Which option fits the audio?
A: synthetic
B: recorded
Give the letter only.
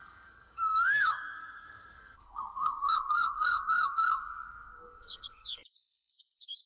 A